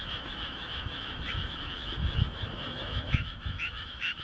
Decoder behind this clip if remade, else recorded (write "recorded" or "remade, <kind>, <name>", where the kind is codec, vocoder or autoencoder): remade, autoencoder, DAC-VAE